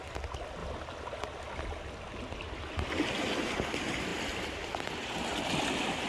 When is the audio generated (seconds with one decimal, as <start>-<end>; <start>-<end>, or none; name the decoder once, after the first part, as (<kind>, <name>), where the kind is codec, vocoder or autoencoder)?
none